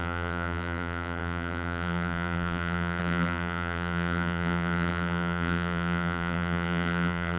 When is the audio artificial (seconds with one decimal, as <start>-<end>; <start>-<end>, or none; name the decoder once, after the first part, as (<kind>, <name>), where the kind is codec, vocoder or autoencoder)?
0.0-7.4 (vocoder, BigVGAN v2)